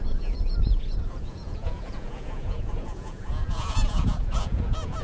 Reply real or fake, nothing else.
fake